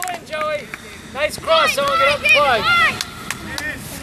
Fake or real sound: real